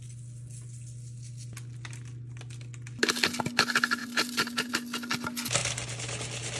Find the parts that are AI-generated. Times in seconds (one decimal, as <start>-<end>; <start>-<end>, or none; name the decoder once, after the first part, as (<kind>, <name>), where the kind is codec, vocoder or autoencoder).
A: 4.0-4.7 (vocoder, BigVGAN v2)